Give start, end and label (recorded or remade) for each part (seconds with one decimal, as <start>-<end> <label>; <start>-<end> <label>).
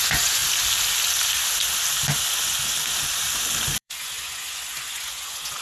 0.0-0.4 remade; 0.4-3.8 recorded; 3.8-5.6 remade